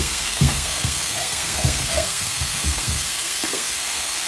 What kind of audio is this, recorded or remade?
remade